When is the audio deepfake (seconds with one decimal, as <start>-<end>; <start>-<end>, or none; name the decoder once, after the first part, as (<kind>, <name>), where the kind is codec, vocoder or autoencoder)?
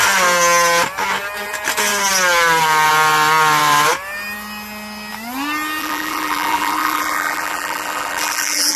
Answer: 5.8-8.8 (vocoder, BigVGAN v2)